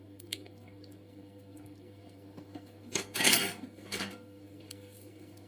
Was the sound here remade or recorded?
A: remade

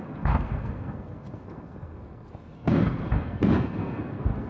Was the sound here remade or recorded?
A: remade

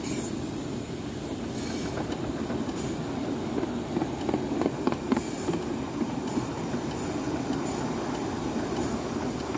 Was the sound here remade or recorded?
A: recorded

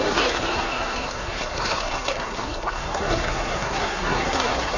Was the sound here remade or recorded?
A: remade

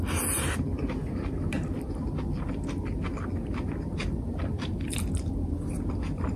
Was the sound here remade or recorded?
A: recorded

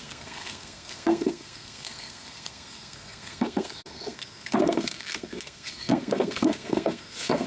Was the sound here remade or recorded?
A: remade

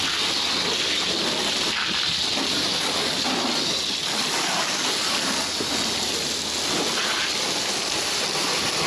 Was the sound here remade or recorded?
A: recorded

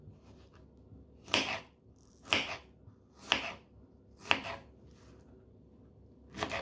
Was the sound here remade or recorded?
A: recorded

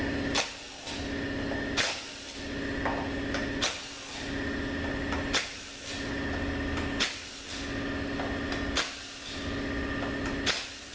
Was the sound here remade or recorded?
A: recorded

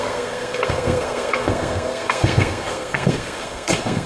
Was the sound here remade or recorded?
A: remade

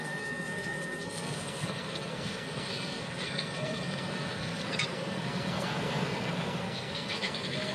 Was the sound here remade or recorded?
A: remade